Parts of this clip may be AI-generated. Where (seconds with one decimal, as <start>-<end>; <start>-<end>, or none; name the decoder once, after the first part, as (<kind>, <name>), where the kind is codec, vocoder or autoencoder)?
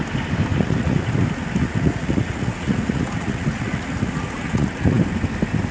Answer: 0.5-1.1 (vocoder, Vocos); 1.6-5.0